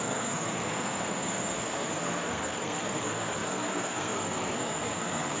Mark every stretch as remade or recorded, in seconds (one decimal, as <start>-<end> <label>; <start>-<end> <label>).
0.0-5.4 remade